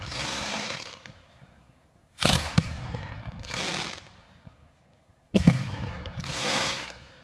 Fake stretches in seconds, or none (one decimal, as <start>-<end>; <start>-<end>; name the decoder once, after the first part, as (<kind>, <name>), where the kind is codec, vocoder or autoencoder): 0.0-3.6 (codec, SNAC); 4.2-7.2